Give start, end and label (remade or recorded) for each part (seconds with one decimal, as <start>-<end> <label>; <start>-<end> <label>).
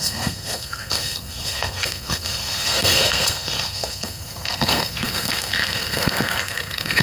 0.0-7.0 remade